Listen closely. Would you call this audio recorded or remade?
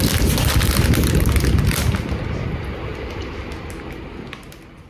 recorded